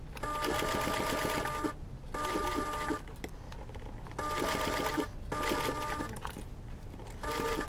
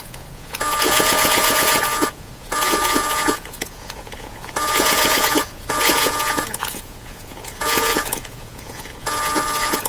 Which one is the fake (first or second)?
second